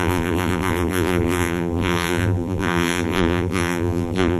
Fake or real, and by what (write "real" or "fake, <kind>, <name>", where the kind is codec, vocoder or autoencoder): fake, vocoder, BigVGAN v2